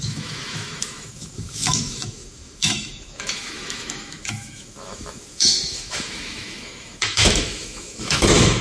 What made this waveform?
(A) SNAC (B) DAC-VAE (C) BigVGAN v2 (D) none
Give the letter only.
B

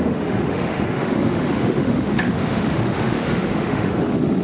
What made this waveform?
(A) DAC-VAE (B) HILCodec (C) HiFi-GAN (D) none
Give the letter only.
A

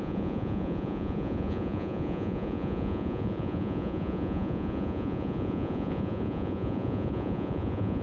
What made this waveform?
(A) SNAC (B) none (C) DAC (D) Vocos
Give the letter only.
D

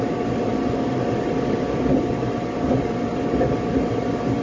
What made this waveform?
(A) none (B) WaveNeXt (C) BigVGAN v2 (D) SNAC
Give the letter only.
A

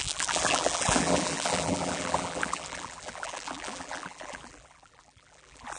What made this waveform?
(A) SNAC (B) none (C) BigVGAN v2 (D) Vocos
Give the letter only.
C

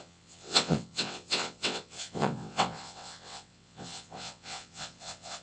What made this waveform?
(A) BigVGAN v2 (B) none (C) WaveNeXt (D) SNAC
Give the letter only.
C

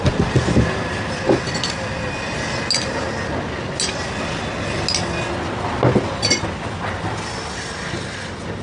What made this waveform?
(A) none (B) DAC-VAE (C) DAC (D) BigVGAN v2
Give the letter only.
A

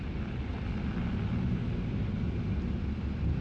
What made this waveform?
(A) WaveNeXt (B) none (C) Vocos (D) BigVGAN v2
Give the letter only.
B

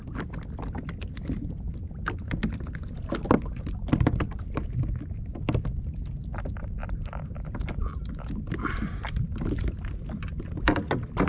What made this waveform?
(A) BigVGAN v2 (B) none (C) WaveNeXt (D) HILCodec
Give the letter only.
B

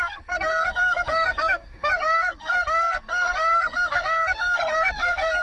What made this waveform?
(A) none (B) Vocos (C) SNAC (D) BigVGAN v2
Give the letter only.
C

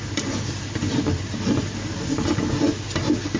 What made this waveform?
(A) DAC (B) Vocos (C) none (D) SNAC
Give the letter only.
C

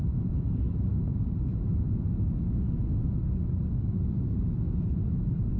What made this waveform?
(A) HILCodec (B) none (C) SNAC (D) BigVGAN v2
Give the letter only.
B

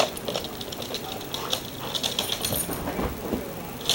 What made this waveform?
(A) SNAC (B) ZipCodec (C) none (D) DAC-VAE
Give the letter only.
C